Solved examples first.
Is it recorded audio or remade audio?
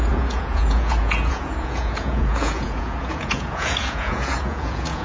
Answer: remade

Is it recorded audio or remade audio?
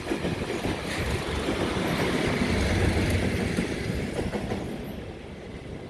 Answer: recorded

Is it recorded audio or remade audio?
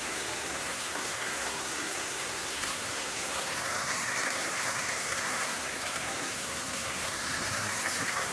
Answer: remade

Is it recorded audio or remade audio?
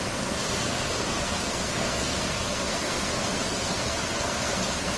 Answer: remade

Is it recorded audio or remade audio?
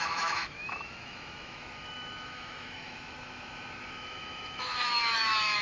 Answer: remade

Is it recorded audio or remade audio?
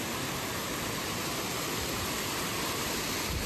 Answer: recorded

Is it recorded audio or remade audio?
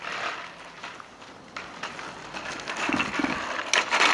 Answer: recorded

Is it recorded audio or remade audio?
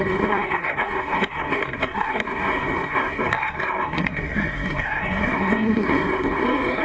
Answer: remade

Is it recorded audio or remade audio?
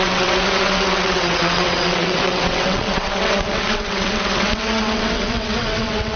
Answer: remade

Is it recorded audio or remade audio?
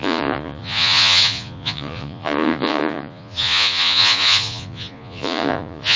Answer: remade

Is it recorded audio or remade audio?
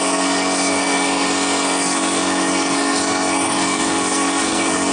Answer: remade